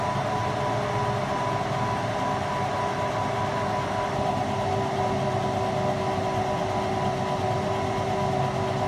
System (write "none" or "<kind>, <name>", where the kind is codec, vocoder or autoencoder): none